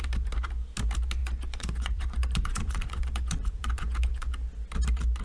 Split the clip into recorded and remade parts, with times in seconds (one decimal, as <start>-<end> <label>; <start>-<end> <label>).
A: 0.0-1.2 recorded; 1.2-4.3 remade; 4.3-5.2 recorded